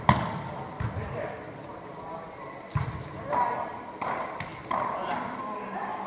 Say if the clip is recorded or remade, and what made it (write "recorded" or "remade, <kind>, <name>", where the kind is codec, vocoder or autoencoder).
recorded